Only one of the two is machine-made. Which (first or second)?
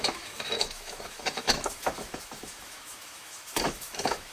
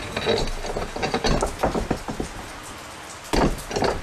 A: first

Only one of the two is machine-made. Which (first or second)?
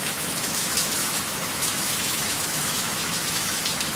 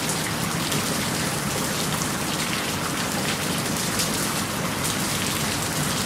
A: first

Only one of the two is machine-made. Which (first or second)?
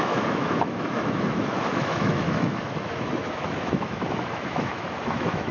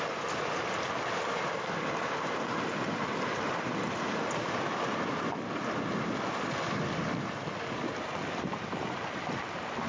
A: first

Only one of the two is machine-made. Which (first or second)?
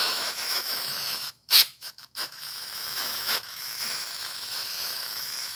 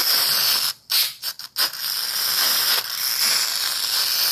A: first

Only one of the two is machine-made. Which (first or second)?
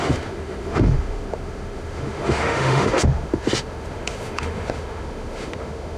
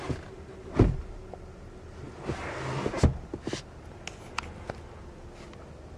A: first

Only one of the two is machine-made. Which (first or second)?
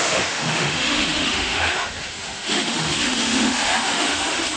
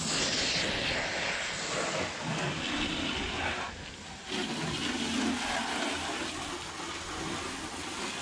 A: first